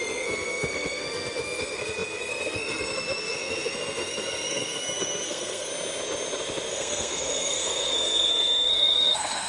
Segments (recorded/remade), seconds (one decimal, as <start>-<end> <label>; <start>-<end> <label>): 0.0-5.7 remade; 5.7-6.7 recorded; 6.7-9.5 remade